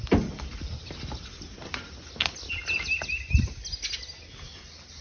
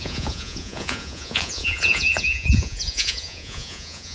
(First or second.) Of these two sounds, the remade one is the second